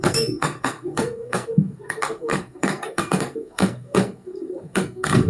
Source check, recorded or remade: remade